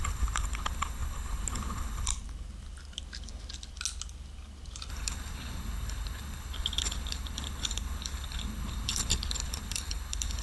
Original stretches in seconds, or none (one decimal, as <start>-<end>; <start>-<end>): 2.1-4.9